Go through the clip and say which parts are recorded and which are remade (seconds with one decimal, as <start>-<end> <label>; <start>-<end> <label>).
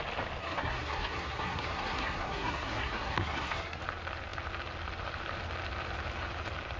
0.0-0.4 recorded; 0.4-3.8 remade; 3.8-6.8 recorded